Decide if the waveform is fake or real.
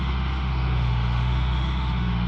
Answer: fake